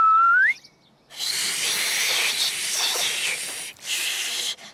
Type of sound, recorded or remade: recorded